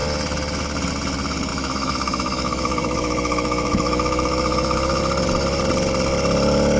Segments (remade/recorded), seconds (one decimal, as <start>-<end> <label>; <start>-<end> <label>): 0.0-1.5 recorded; 1.5-5.0 remade; 5.0-6.8 recorded